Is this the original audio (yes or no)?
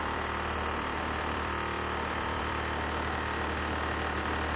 no